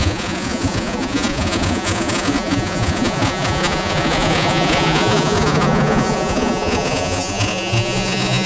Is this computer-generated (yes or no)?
yes